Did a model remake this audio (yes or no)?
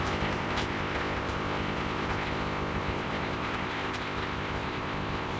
yes